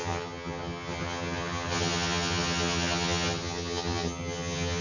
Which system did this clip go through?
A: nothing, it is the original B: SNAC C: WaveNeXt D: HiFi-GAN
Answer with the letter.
D